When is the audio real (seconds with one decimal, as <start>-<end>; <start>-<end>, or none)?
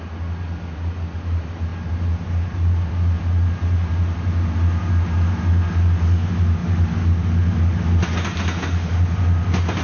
0.0-9.8